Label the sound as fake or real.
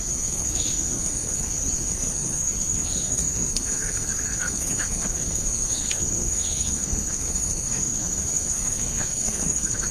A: fake